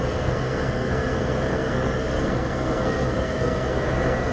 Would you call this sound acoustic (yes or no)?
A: no